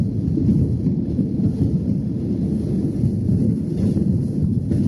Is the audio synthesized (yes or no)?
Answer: no